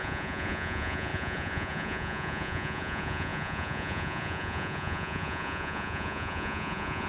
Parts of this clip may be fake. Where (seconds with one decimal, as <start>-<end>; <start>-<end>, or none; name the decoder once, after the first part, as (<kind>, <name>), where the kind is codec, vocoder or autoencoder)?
0.0-7.1 (vocoder, Vocos)